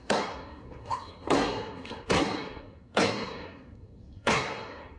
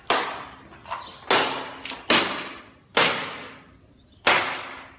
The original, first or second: second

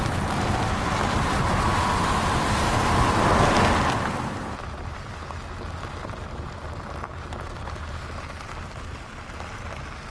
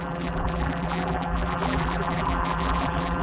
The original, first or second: first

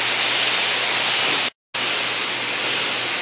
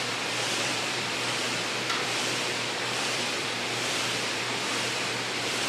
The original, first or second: first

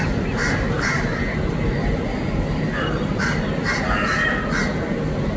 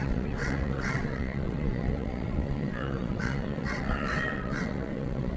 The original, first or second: first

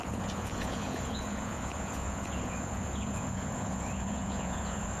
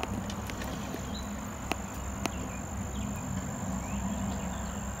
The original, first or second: second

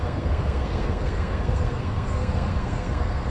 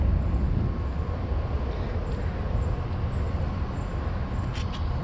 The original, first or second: second